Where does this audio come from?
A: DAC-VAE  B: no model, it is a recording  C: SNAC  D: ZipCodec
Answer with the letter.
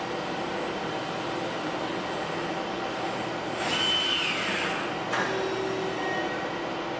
B